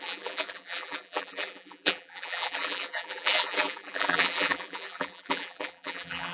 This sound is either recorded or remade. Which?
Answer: remade